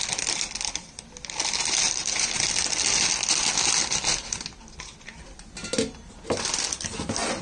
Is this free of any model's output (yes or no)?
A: yes